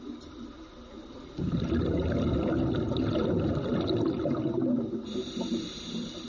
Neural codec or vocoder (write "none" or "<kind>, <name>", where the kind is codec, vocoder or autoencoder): none